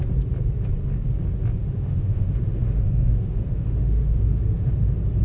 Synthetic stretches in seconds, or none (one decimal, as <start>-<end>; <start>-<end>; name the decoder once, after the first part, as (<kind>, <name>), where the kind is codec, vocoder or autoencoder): 1.6-4.7 (autoencoder, DAC-VAE)